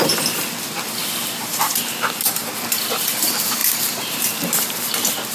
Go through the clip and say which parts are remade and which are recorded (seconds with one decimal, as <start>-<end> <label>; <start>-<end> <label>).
0.0-1.0 recorded; 1.0-2.5 remade; 2.5-3.6 recorded; 3.6-4.8 remade; 4.8-5.3 recorded